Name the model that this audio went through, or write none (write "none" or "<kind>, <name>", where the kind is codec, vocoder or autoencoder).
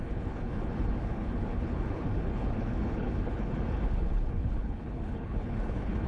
codec, HILCodec